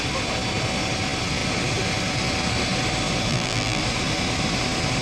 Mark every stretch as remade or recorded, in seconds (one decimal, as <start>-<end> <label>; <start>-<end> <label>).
0.0-3.3 recorded; 3.3-3.8 remade; 3.8-5.0 recorded